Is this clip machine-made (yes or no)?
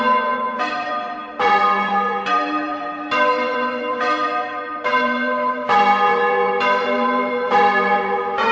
yes